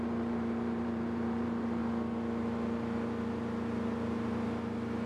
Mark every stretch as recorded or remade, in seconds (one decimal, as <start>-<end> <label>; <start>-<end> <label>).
0.0-1.8 remade; 1.8-5.1 recorded